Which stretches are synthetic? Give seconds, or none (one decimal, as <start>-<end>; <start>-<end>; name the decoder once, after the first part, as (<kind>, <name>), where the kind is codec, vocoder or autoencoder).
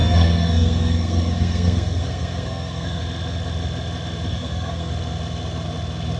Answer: 0.0-3.0 (codec, SNAC); 4.3-4.9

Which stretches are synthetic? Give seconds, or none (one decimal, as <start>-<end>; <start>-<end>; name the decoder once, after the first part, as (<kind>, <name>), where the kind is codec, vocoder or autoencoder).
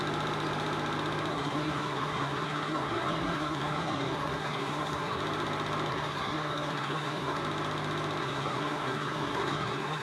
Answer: 1.3-5.2 (codec, SNAC); 5.9-7.4; 8.2-10.0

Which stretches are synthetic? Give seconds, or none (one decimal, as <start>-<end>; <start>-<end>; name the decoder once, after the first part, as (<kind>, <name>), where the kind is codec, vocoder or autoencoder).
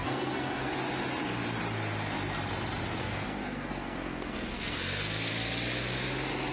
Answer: 0.0-0.7 (codec, SNAC); 3.0-5.3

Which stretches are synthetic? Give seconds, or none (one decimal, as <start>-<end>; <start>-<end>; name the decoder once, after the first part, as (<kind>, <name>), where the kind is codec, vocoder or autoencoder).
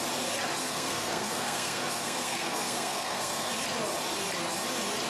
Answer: 0.6-3.5 (codec, SNAC)